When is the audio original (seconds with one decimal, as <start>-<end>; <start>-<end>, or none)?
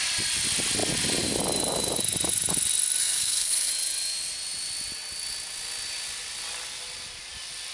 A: 0.0-3.0; 3.7-7.7